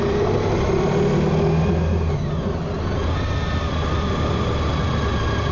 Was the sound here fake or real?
real